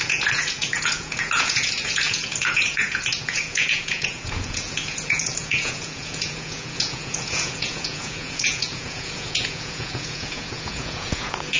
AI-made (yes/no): yes